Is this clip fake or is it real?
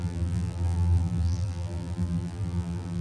fake